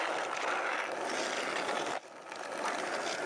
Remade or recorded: recorded